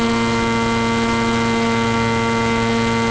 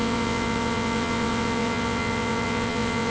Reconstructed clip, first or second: second